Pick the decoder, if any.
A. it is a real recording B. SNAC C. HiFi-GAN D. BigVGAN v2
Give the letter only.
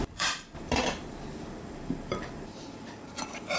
D